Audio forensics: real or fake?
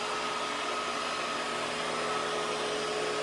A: real